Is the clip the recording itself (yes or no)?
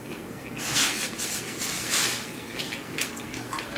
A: no